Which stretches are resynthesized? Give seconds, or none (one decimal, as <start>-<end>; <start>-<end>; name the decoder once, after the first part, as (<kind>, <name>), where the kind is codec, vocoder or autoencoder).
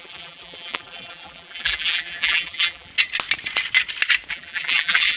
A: 0.0-2.9 (vocoder, BigVGAN v2); 4.3-5.2